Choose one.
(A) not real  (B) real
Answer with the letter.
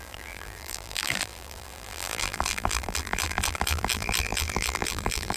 A